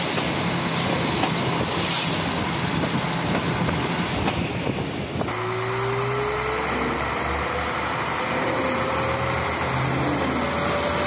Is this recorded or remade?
recorded